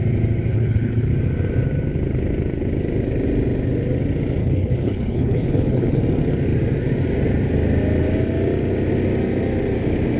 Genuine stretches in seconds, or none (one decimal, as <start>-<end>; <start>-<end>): 0.0-0.5; 1.1-4.4; 6.0-10.2